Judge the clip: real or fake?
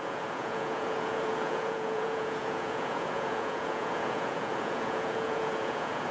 fake